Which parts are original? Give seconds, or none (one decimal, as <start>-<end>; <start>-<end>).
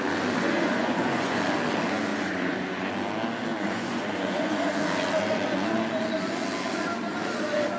0.0-0.4; 1.4-2.1; 2.9-3.5; 4.8-7.8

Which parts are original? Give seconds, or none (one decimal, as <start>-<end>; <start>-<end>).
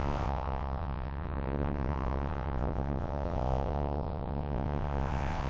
none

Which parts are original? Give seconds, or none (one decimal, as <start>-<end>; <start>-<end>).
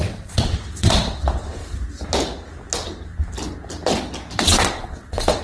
1.6-4.4